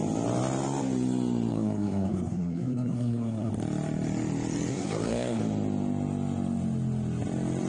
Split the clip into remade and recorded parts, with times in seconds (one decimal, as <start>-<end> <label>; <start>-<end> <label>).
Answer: 0.0-1.5 recorded; 1.5-3.5 remade; 3.5-4.7 recorded; 4.7-5.4 remade; 5.4-7.7 recorded